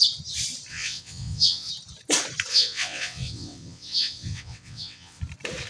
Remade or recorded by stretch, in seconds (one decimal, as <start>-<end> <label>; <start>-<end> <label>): 0.0-0.7 recorded; 0.7-1.7 remade; 1.7-2.5 recorded; 2.5-5.2 remade; 5.2-5.7 recorded